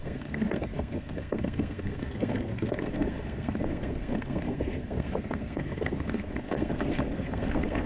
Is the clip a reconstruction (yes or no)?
yes